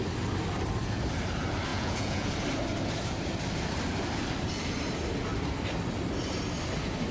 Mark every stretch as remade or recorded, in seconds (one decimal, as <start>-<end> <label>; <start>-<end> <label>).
0.0-1.7 recorded; 1.7-2.3 remade; 2.3-7.1 recorded